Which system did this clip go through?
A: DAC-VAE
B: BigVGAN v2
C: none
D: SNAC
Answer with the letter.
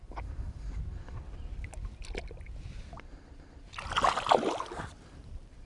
C